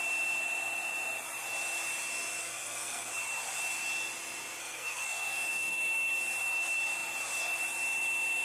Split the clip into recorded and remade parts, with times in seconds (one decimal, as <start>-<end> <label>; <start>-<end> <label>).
0.0-2.4 recorded; 2.4-3.1 remade; 3.1-4.6 recorded; 4.6-6.2 remade; 6.2-8.4 recorded